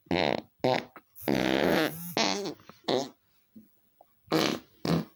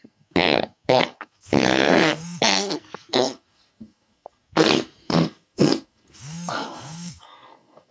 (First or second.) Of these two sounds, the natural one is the first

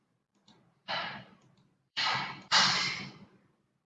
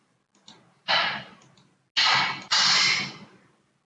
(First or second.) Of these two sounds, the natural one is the second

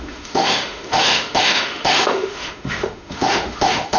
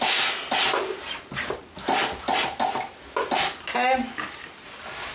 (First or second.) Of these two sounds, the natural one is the second